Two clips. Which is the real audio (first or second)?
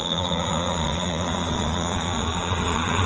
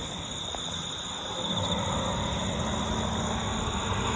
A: second